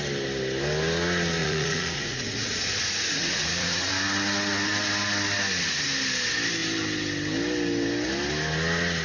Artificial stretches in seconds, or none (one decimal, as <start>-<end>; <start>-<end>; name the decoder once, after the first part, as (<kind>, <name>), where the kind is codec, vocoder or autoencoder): 1.4-3.9 (vocoder, Vocos)

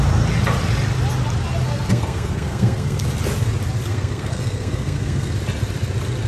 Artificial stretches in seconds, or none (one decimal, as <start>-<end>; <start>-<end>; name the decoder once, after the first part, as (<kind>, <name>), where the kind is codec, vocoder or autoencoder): 1.9-3.0 (codec, SNAC); 3.9-5.3

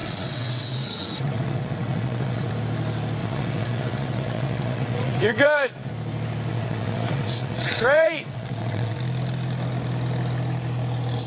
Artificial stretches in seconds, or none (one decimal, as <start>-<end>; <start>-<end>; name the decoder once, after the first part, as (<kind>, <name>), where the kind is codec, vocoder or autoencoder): 0.0-2.5 (vocoder, WaveNeXt); 3.2-5.9; 6.5-9.0

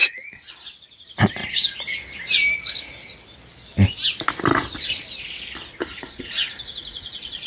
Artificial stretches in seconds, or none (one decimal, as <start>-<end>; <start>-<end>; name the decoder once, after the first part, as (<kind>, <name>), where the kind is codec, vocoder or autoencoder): 0.0-0.5 (vocoder, Vocos); 5.9-7.5

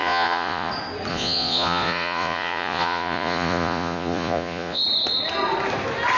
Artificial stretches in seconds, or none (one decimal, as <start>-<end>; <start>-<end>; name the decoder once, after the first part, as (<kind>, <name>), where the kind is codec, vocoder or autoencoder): 0.0-0.7 (vocoder, Vocos); 1.1-4.8

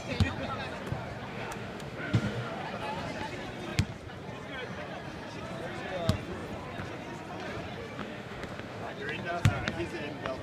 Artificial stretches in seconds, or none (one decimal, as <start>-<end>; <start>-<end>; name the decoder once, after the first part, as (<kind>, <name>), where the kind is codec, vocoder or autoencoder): 1.3-2.6 (autoencoder, DAC-VAE); 8.0-8.9

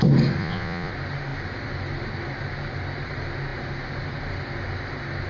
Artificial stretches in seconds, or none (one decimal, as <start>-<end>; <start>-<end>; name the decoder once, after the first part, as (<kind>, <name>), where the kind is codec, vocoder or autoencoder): 0.4-0.9 (vocoder, Vocos)

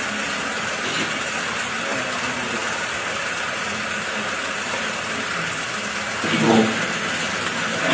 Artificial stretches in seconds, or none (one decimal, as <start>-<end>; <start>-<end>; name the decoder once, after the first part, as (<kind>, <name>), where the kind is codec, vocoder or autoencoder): none